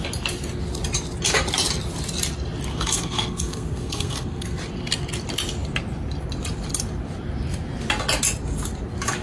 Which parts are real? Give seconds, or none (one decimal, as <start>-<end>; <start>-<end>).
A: 0.0-2.7; 4.6-9.2